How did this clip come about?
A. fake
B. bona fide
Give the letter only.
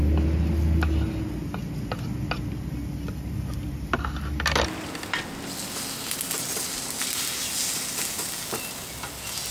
B